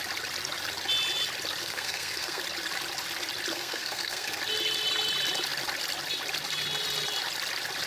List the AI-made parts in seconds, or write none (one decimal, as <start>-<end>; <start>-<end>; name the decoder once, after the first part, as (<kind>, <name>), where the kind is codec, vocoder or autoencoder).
1.6-2.4 (codec, SNAC); 3.5-4.4